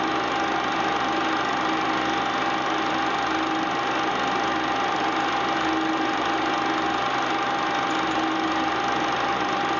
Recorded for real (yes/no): yes